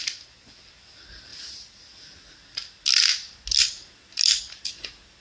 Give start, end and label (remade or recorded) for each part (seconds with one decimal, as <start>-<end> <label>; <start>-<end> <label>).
0.0-5.2 recorded